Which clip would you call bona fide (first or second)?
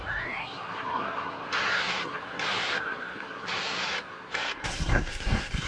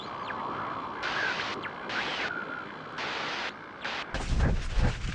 second